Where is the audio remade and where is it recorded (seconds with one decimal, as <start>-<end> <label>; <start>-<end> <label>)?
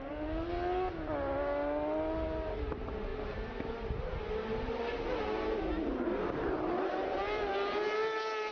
0.0-8.5 recorded